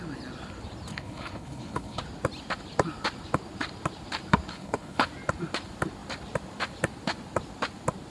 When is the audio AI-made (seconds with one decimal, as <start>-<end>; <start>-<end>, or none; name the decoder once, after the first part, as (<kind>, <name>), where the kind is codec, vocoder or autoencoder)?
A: 0.9-2.0 (codec, HILCodec); 4.5-5.1